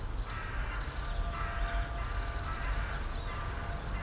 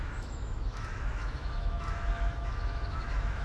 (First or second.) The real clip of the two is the first